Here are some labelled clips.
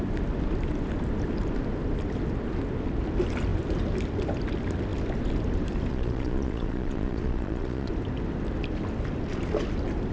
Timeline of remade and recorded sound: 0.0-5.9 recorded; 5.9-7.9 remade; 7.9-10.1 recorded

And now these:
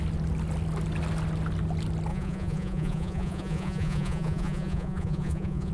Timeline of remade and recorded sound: 0.0-2.1 recorded; 2.1-5.7 remade